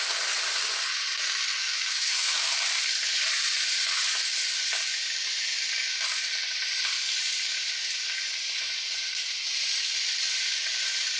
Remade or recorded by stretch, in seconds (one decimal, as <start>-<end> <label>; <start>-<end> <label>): 0.0-1.6 recorded; 1.6-2.5 remade; 2.5-11.2 recorded